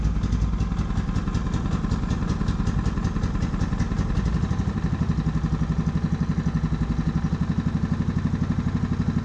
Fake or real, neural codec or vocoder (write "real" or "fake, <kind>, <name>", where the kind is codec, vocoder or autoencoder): real